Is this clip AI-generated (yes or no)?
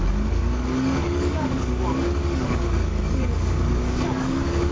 yes